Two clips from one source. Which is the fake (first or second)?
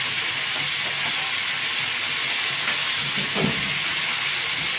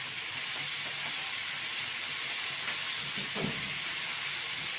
second